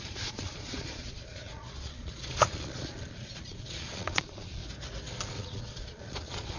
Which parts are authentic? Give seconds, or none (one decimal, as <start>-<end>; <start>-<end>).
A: 4.6-5.3